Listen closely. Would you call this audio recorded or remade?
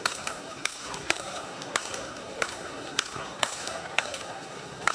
remade